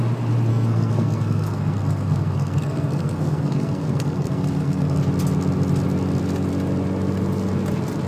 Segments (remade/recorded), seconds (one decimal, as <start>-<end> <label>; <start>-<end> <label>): 0.0-0.5 recorded; 0.5-5.0 remade; 5.0-8.1 recorded